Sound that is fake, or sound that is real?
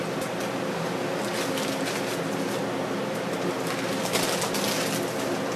real